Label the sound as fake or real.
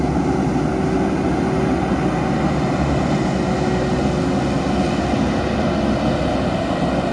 real